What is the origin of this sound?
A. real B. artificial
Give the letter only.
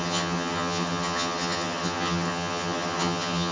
B